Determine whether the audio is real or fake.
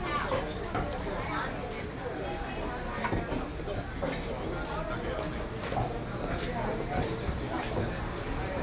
real